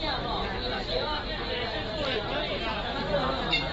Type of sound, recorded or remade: recorded